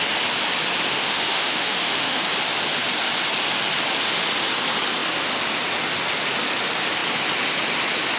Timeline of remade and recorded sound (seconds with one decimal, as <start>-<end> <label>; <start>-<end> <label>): 0.0-0.9 recorded; 0.9-2.2 remade; 2.2-8.2 recorded